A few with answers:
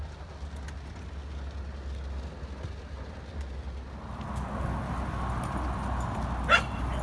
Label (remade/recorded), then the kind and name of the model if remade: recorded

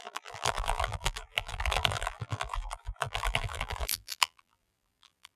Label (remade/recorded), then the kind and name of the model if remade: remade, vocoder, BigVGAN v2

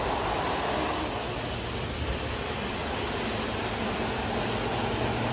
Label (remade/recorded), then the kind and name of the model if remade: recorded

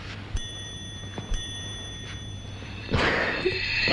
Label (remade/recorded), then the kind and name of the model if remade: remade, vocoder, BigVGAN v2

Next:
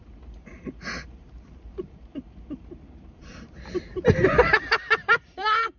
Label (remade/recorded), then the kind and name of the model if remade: remade, vocoder, BigVGAN v2